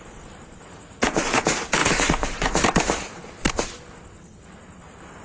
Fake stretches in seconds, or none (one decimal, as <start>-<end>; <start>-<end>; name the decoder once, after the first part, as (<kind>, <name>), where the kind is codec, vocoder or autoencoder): 0.6-1.4 (vocoder, Vocos); 1.8-2.6